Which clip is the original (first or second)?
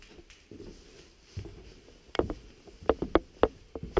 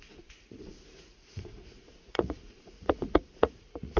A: first